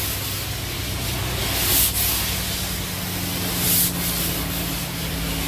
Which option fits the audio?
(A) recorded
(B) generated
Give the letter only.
A